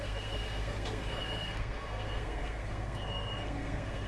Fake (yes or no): yes